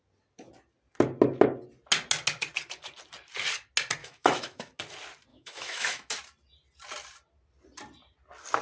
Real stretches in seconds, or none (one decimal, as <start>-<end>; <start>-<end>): 0.0-4.0; 4.8-5.3; 6.1-8.6

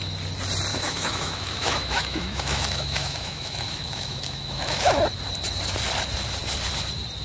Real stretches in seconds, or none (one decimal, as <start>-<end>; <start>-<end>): 0.0-0.7; 5.0-7.2

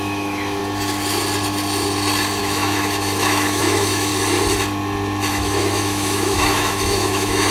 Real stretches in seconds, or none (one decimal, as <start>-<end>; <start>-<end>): 0.6-2.4; 4.1-5.3

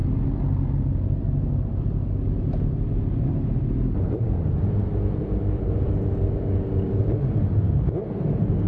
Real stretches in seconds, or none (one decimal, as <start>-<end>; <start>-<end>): 0.0-8.7

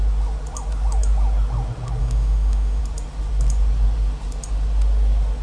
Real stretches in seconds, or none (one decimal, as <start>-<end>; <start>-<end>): 0.0-2.0; 2.8-5.4